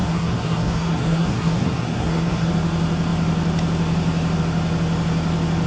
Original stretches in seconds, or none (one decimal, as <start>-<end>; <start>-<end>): 2.5-5.7